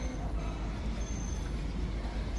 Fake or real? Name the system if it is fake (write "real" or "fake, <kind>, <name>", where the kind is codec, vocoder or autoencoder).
real